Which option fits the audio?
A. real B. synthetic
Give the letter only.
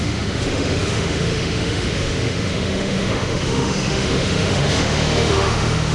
B